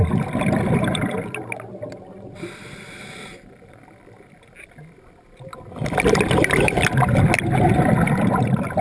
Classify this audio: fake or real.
real